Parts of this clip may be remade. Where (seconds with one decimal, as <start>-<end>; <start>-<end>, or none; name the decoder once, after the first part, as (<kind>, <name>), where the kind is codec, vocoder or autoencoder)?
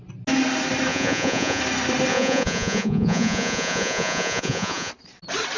0.9-1.6 (vocoder, Vocos); 2.1-4.9